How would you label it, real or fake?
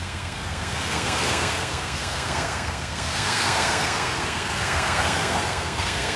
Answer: fake